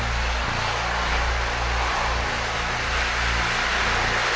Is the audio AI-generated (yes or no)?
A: no